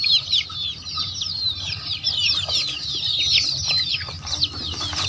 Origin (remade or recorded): remade